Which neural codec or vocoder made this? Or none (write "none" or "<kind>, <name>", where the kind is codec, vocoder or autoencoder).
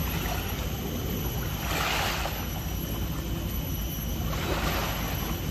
none